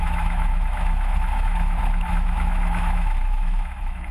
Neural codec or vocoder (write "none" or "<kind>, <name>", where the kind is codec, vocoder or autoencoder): autoencoder, DAC-VAE